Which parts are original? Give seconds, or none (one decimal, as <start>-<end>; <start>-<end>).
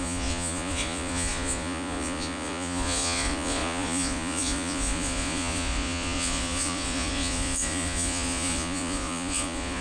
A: none